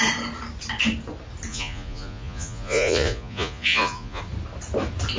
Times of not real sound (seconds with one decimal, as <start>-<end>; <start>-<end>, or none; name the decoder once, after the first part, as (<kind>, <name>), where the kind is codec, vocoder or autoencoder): 1.5-4.2 (vocoder, Vocos)

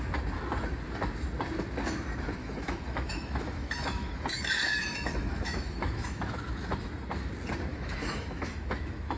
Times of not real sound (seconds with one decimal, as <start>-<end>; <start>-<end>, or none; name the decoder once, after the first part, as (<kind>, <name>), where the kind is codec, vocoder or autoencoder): 2.4-6.5 (autoencoder, DAC-VAE); 7.7-9.2

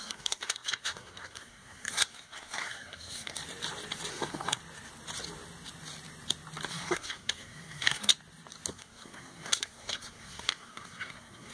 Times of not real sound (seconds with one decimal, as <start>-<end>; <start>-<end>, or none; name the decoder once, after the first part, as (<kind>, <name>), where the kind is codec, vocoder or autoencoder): 0.0-3.4 (codec, SNAC); 4.1-4.6; 6.7-8.1; 8.7-11.5

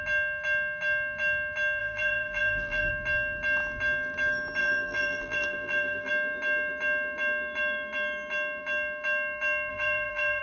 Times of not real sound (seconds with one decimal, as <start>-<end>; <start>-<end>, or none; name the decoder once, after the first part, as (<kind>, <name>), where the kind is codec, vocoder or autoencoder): 1.8-2.9 (vocoder, BigVGAN v2); 4.6-6.1; 9.7-10.4

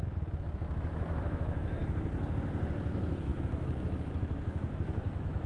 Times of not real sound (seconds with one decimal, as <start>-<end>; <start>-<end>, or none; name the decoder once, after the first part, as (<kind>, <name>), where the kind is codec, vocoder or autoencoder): 0.0-1.8 (autoencoder, DAC-VAE); 2.8-5.5

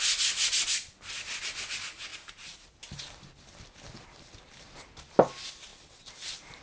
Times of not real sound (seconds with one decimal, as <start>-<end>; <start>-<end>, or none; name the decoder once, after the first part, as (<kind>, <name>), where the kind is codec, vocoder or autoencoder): 2.1-2.8 (vocoder, BigVGAN v2); 5.7-6.6